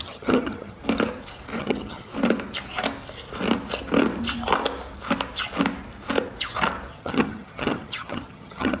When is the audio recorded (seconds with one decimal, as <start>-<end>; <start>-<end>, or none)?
0.8-1.6; 2.1-6.9